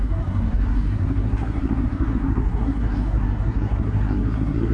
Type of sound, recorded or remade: remade